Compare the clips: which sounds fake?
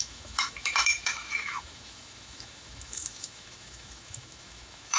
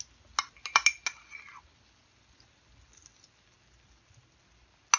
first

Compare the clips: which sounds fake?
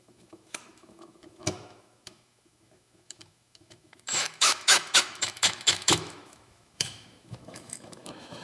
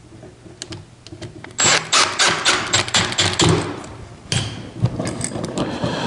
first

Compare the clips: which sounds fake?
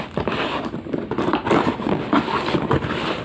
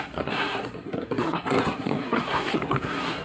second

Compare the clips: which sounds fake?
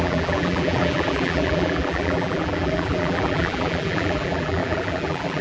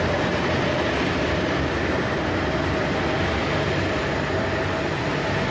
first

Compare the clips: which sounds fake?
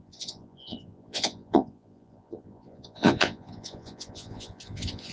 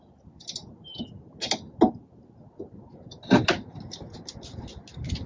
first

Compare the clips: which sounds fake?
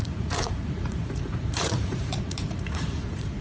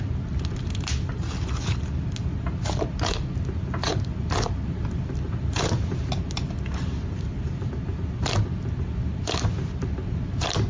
first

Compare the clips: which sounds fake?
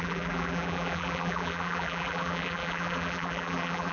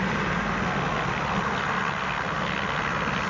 first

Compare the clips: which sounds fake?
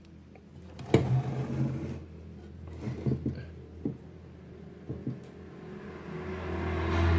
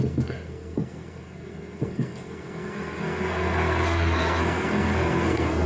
second